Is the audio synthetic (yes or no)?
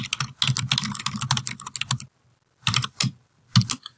no